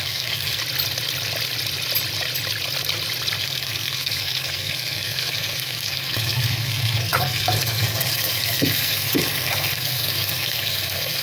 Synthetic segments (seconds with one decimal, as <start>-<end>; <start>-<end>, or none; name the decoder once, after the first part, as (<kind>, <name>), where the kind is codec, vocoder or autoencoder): 0.0-0.6 (codec, SNAC); 3.4-11.2